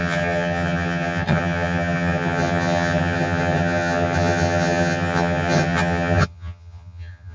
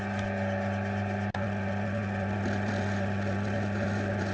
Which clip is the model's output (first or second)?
first